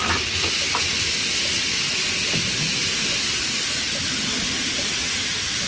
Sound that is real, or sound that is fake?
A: real